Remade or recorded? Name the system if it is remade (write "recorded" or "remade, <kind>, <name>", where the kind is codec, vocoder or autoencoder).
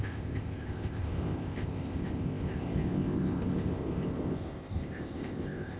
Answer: remade, codec, ZipCodec